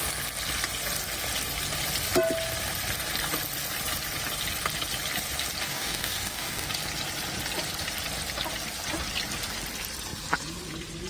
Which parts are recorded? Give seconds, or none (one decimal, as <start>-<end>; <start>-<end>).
0.0-5.6; 6.7-11.1